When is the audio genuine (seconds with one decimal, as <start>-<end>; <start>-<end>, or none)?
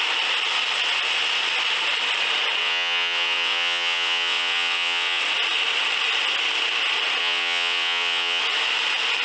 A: 0.0-2.6; 5.2-7.2; 8.4-9.2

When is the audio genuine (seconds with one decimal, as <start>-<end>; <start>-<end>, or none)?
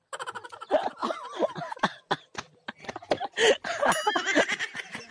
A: 0.0-5.1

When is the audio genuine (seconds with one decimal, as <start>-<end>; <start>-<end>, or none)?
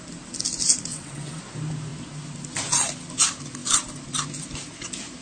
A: 0.0-0.9; 1.4-5.2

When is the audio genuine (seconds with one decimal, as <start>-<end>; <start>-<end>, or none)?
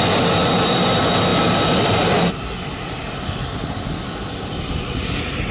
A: 0.0-5.5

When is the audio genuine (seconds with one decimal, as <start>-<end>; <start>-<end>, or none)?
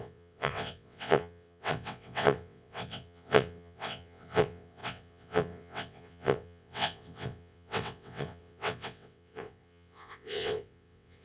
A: none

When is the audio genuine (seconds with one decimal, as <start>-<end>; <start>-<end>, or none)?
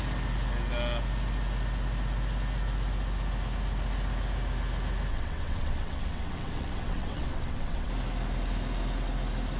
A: 0.0-5.1; 7.9-9.6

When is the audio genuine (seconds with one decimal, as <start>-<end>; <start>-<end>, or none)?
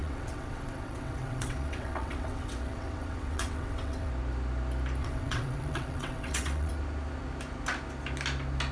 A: 4.1-5.0; 6.7-8.7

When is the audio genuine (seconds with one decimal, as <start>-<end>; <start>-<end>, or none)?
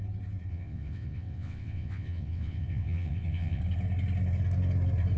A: 0.0-0.5; 3.6-5.2